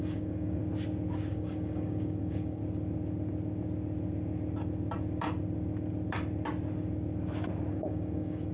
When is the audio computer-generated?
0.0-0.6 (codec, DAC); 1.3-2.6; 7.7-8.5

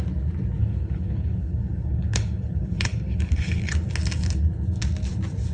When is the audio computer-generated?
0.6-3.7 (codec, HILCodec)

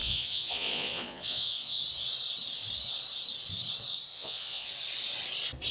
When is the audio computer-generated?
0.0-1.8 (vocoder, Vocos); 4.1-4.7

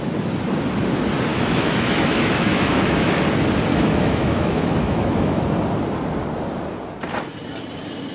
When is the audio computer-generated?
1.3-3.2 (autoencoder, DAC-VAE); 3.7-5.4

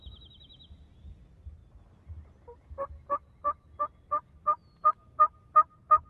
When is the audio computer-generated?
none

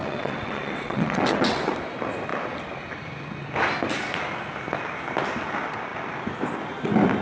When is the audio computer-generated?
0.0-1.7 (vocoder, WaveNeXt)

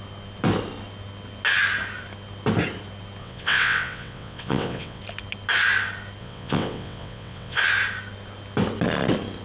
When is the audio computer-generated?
3.2-5.0 (vocoder, WaveNeXt); 6.2-7.6

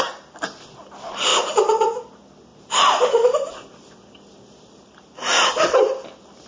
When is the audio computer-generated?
1.3-2.0 (vocoder, BigVGAN v2); 2.5-5.0